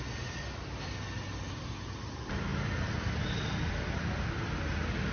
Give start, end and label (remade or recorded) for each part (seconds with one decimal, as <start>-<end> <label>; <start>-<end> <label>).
0.0-5.1 recorded